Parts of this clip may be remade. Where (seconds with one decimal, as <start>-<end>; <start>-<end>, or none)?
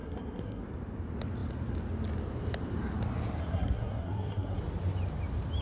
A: 0.0-0.6; 3.4-4.6